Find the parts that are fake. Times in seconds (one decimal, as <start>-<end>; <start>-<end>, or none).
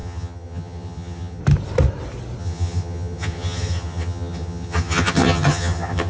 0.0-1.4; 2.4-6.1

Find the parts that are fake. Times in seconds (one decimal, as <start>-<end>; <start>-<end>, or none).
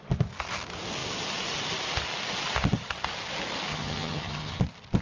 3.7-4.6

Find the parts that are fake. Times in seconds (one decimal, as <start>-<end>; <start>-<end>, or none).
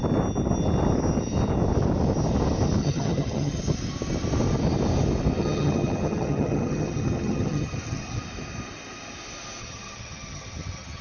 2.8-3.6; 5.4-8.2; 9.6-11.0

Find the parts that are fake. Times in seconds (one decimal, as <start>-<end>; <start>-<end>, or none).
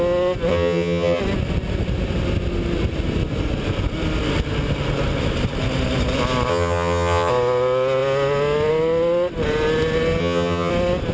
0.5-1.2; 6.5-7.3; 10.2-10.7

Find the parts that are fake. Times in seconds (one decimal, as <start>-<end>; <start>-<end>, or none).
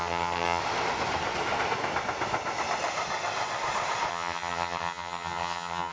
0.0-0.6; 4.1-5.9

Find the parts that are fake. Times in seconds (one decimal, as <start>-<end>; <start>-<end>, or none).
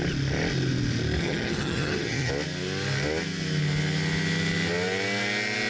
1.2-2.3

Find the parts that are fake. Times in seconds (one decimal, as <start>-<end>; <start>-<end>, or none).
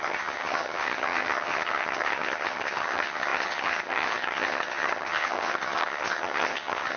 0.0-7.0